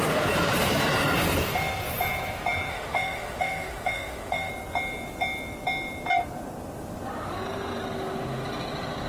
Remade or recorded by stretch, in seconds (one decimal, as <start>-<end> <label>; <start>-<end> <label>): 0.0-2.7 recorded; 2.7-4.5 remade; 4.5-9.1 recorded